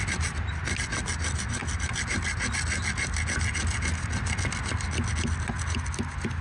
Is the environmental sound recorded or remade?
recorded